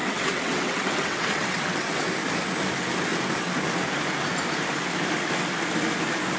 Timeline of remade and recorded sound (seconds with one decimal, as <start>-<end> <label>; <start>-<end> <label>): 0.0-2.1 remade; 2.1-6.4 recorded